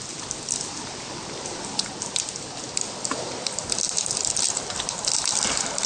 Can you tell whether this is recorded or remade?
recorded